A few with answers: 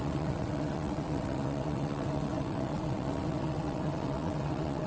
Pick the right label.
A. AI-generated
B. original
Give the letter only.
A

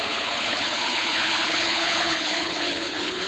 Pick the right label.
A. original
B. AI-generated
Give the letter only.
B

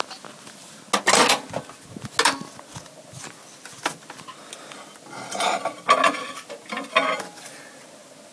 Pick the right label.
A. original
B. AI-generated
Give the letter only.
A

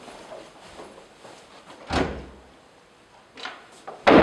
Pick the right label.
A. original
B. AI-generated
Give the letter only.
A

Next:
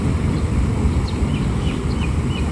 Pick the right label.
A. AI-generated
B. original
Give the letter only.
B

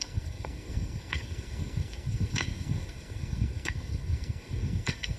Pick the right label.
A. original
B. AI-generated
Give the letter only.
B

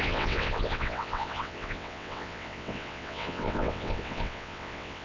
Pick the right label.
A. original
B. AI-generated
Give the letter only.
B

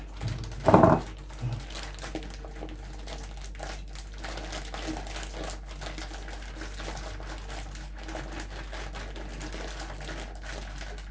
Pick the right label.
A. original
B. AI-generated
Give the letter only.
A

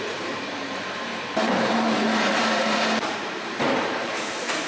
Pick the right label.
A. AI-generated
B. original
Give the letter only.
A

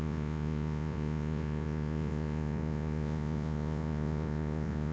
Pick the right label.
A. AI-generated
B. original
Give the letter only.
A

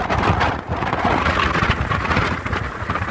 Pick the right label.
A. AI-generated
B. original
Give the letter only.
A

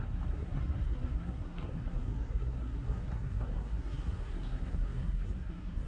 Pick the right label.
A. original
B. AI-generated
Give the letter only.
B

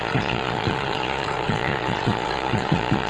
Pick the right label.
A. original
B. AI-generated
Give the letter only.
B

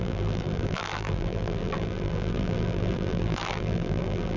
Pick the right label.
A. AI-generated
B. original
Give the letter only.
A